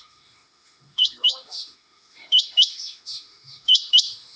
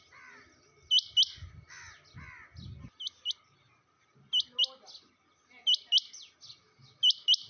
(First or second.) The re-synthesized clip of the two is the first